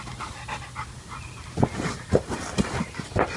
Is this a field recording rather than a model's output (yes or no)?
yes